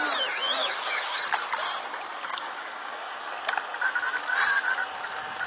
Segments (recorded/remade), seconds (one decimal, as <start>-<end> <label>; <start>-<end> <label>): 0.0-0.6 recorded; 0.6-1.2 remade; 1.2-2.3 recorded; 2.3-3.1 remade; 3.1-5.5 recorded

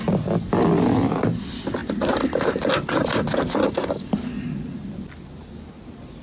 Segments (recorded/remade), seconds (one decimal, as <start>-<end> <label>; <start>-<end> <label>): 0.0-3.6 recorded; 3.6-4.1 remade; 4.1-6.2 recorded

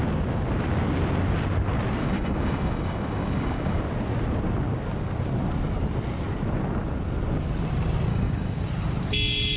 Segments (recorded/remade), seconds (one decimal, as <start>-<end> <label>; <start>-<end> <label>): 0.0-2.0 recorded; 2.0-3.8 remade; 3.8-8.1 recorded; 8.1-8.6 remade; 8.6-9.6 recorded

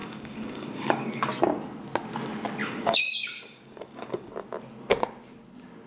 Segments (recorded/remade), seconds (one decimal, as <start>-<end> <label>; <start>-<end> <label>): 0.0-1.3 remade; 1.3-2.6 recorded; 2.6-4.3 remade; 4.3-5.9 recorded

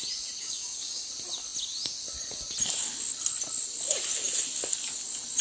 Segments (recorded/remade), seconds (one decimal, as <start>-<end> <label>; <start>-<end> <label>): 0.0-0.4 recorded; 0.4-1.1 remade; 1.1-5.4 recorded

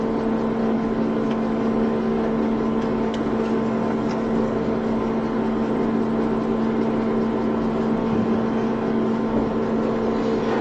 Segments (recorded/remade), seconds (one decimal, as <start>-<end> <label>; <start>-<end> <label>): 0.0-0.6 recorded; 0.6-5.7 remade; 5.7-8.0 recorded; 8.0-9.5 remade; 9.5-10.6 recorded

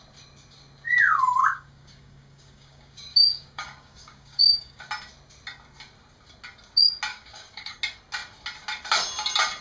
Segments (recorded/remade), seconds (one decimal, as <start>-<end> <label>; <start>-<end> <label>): 0.0-1.4 recorded; 1.4-4.8 remade; 4.8-7.1 recorded; 7.1-7.7 remade; 7.7-9.6 recorded

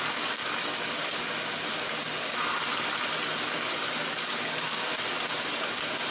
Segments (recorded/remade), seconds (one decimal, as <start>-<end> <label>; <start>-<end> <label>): 0.0-0.4 remade; 0.4-4.1 recorded; 4.1-4.9 remade; 4.9-6.1 recorded